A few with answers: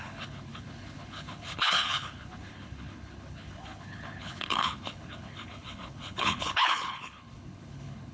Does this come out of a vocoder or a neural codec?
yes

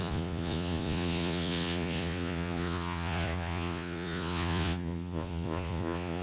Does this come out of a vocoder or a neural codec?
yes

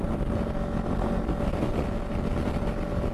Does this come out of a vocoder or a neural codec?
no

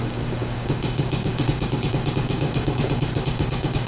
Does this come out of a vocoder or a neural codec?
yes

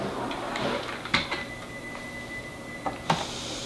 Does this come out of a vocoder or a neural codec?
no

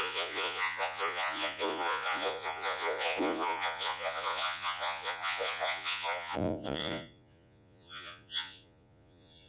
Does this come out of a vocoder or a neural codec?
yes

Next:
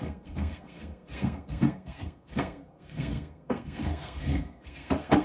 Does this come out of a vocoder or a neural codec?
yes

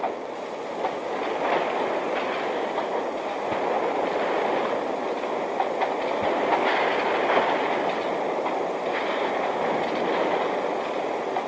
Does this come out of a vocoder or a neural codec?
no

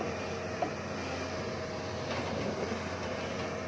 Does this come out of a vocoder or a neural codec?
no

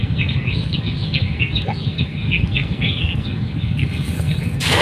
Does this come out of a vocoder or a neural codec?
yes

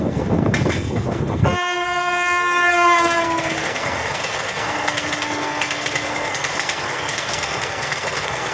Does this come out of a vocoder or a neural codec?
yes